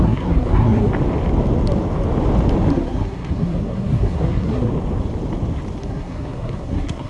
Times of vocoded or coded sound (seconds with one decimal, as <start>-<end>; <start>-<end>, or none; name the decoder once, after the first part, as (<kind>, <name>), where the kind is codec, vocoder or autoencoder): 0.0-0.9 (codec, SNAC); 2.7-4.7; 5.8-7.1